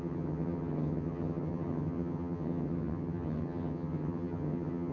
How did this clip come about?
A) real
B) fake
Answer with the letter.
B